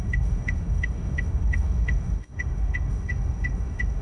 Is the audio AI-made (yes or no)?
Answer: yes